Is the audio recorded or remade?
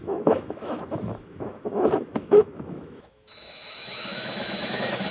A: remade